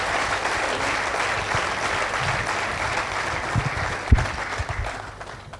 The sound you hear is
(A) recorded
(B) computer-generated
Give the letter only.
A